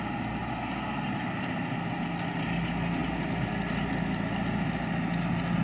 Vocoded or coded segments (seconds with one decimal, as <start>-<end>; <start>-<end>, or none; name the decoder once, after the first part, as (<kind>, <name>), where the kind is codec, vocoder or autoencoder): none